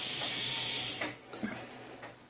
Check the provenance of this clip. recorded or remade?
remade